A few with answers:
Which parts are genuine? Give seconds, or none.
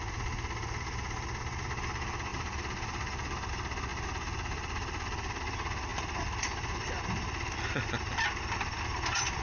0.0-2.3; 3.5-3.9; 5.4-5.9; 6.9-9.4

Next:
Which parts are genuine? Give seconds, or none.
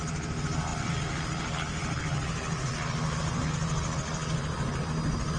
0.0-0.7; 3.5-5.4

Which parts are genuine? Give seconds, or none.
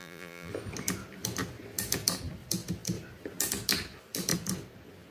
0.5-5.1